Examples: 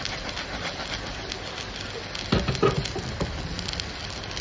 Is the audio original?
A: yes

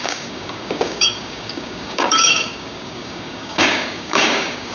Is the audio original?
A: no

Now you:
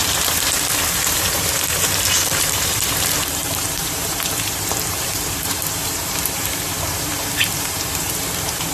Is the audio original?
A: no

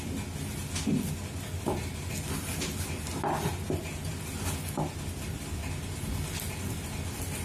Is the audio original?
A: yes